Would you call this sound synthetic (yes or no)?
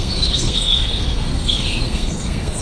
yes